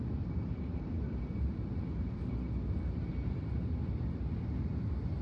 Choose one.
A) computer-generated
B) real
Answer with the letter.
B